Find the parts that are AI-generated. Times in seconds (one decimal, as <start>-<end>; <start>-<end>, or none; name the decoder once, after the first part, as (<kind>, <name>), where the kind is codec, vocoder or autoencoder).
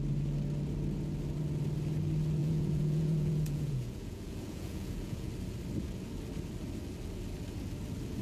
2.4-5.3 (vocoder, Vocos)